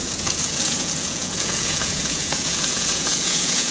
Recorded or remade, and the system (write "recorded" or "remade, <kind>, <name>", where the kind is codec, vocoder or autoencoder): remade, vocoder, Vocos